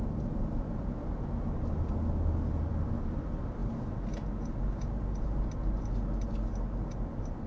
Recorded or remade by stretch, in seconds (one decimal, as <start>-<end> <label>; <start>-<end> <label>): 0.0-7.5 recorded